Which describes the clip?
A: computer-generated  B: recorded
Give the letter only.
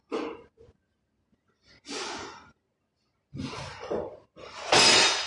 B